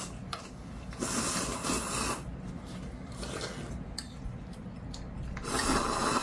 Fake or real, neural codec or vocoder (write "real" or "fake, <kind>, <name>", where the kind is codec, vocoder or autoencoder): real